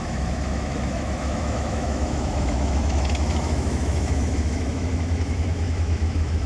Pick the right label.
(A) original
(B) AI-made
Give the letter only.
B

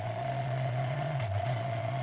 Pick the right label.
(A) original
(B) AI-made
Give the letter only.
B